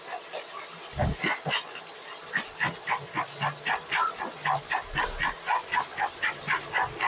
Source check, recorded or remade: recorded